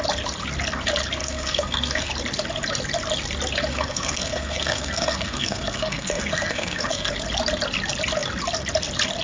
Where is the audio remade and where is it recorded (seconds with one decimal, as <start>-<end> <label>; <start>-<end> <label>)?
0.0-1.2 recorded; 1.2-2.1 remade; 2.1-3.7 recorded; 3.7-7.1 remade; 7.1-9.2 recorded